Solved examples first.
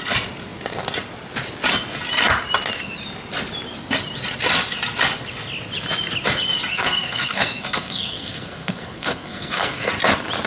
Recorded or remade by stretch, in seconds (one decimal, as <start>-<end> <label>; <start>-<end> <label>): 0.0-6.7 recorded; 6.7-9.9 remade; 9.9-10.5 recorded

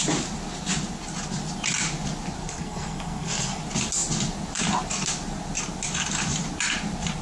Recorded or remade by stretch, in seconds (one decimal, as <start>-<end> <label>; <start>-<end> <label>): 0.0-2.4 recorded; 2.4-3.6 remade; 3.6-7.2 recorded

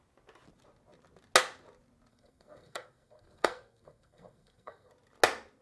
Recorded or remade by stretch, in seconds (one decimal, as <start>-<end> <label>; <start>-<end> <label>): 0.0-2.1 recorded; 2.1-4.9 remade; 4.9-5.6 recorded

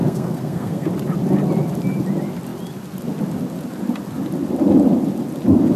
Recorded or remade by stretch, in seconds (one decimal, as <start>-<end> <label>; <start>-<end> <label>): 0.0-0.9 remade; 0.9-5.8 recorded